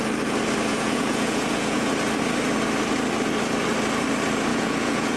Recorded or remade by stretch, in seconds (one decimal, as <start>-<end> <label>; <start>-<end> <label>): 0.0-0.7 recorded; 0.7-1.9 remade; 1.9-4.5 recorded; 4.5-5.2 remade